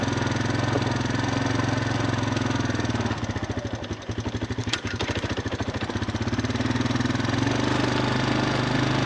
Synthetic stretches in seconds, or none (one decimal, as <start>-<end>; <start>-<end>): 4.6-5.9